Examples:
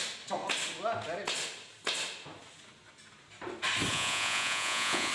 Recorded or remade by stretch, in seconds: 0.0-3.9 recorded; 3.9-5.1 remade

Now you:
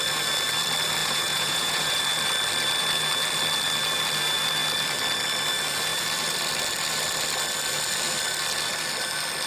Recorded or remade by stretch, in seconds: 0.0-1.0 recorded; 1.0-2.0 remade; 2.0-9.5 recorded

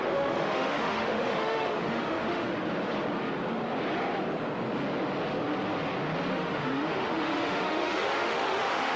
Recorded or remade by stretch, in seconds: 0.0-2.5 remade; 2.5-6.3 recorded; 6.3-9.0 remade

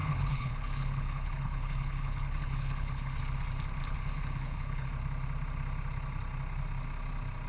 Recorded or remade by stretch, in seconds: 0.0-3.2 remade; 3.2-3.8 recorded; 3.8-4.9 remade; 4.9-7.5 recorded

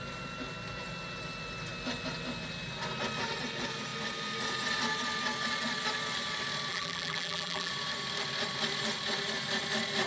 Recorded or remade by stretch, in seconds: 0.0-6.7 recorded; 6.7-7.7 remade; 7.7-10.1 recorded

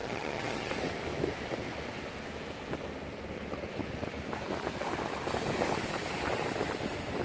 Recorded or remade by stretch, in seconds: 0.0-0.7 remade; 0.7-7.2 recorded

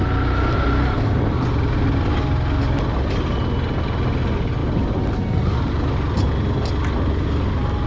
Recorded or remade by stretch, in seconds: 0.0-7.9 recorded

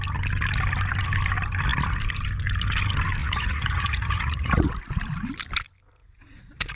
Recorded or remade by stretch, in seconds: 0.0-3.2 recorded; 3.2-4.7 remade; 4.7-6.0 recorded; 6.0-6.8 remade